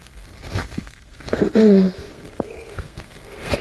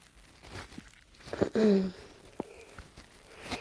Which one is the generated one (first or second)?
first